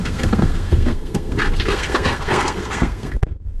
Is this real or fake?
fake